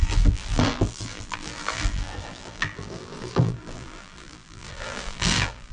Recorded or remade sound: remade